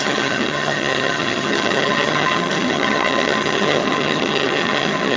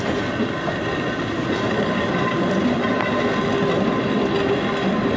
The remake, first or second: first